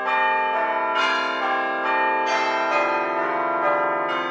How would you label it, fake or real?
real